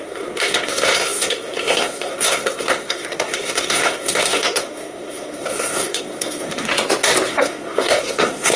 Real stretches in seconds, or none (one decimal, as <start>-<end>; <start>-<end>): 6.7-7.3